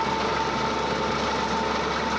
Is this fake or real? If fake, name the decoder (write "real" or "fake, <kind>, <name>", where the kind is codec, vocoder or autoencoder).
real